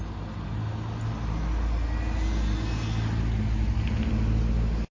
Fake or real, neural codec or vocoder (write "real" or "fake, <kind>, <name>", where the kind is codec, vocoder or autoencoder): real